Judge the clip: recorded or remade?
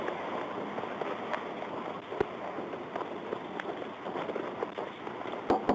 recorded